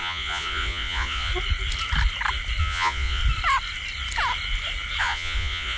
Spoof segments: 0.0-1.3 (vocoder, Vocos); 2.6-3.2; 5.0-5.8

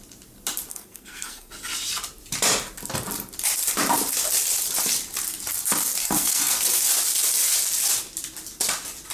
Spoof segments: 0.7-1.5 (codec, SNAC); 6.0-6.9

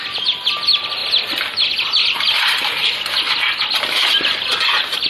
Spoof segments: none

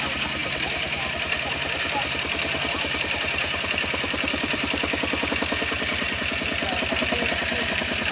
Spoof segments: 0.0-6.6 (vocoder, BigVGAN v2)